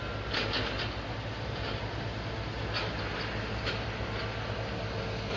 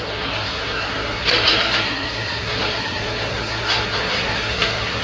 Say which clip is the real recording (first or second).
first